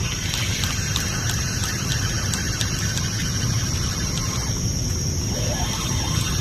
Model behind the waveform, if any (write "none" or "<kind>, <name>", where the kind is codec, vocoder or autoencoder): none